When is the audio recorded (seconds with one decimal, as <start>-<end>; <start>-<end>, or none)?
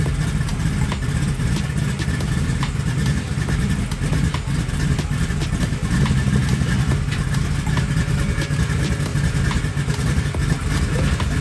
0.0-11.4